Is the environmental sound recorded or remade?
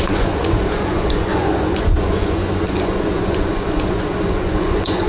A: remade